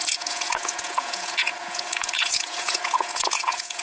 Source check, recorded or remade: remade